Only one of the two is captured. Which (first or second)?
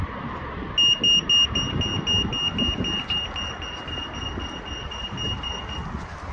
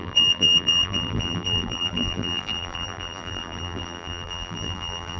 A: first